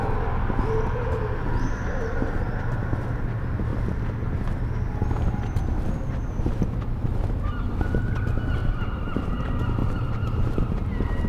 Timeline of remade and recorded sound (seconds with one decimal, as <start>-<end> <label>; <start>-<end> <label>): 0.0-8.6 recorded; 8.6-9.4 remade; 9.4-9.8 recorded; 9.8-10.7 remade; 10.7-11.3 recorded